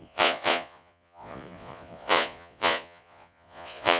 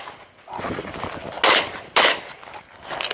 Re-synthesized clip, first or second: first